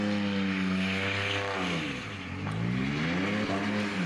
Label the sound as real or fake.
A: real